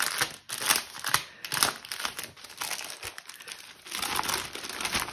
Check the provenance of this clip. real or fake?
real